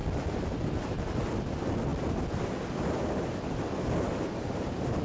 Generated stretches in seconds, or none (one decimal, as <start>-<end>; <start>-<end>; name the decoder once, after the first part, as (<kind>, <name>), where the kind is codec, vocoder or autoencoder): none